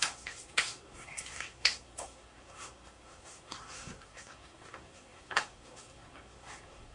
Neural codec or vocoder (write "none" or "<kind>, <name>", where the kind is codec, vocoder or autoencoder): codec, SNAC